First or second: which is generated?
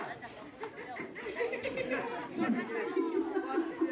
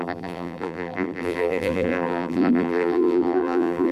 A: second